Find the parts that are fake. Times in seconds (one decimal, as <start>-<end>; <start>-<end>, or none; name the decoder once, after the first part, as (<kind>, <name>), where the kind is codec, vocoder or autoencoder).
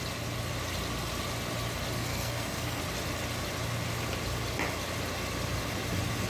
2.1-2.8 (codec, SNAC)